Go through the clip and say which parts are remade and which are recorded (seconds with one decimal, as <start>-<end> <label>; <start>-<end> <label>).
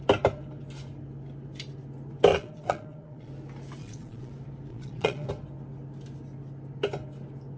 0.0-2.3 recorded; 2.3-3.3 remade; 3.3-3.8 recorded; 3.8-4.3 remade; 4.3-4.7 recorded; 4.7-5.3 remade; 5.3-7.6 recorded